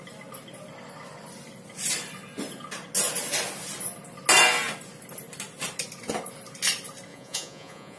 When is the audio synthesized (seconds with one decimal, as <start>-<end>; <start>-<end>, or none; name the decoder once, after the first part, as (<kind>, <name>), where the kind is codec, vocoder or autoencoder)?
7.1-8.0 (vocoder, Vocos)